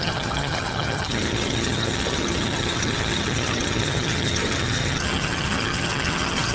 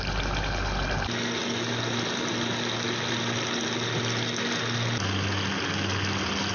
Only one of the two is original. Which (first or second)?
second